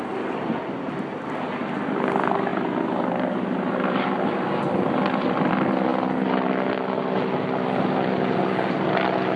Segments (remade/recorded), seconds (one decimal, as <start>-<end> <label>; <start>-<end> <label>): 0.0-9.4 recorded